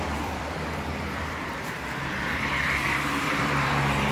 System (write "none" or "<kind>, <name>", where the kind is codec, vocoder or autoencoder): vocoder, BigVGAN v2